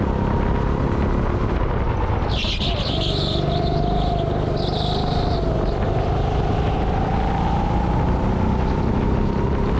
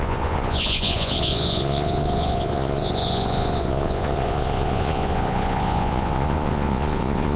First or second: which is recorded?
first